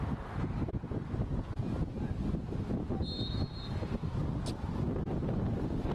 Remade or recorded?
recorded